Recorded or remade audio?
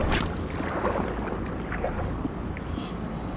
recorded